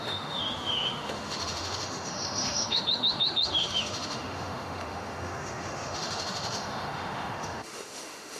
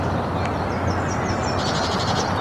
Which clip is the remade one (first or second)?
first